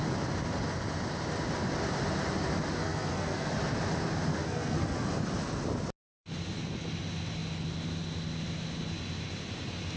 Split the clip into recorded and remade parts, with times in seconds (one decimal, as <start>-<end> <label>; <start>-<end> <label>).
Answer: 0.0-2.8 recorded; 2.8-3.5 remade; 3.5-4.3 recorded; 4.3-5.1 remade; 5.1-10.0 recorded